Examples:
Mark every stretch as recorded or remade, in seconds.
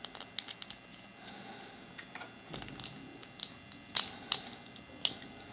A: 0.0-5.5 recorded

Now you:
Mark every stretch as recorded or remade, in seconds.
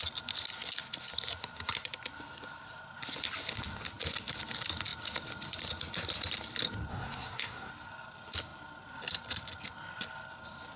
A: 0.0-6.9 recorded; 6.9-7.7 remade; 7.7-10.8 recorded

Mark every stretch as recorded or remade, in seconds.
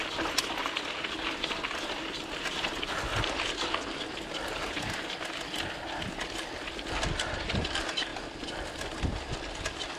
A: 0.0-10.0 recorded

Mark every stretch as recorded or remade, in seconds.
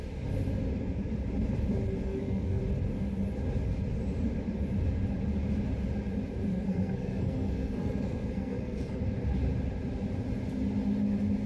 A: 0.0-2.0 recorded; 2.0-2.6 remade; 2.6-6.5 recorded; 6.5-9.0 remade; 9.0-11.5 recorded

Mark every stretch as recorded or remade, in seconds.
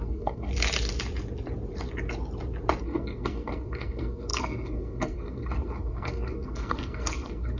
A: 0.0-0.5 remade; 0.5-2.8 recorded; 2.8-7.6 remade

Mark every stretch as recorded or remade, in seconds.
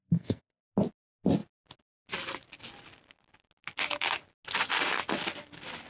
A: 0.0-0.6 remade; 0.6-5.9 recorded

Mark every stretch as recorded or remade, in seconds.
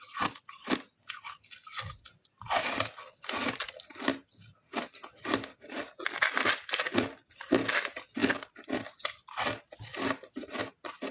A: 0.0-11.1 recorded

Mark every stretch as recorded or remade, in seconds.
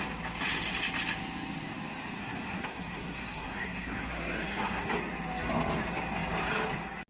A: 0.0-2.2 recorded; 2.2-4.9 remade; 4.9-7.1 recorded